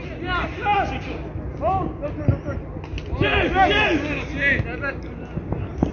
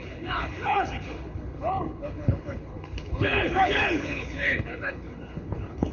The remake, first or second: second